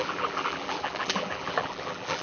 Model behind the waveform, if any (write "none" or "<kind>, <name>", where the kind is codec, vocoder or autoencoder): vocoder, BigVGAN v2